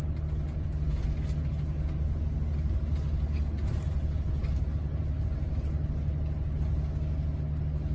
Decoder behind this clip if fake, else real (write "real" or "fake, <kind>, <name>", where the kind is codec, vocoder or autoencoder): real